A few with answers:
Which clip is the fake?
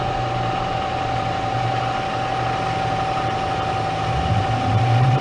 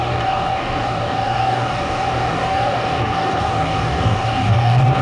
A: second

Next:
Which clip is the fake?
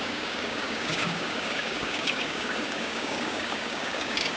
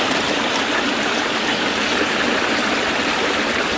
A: first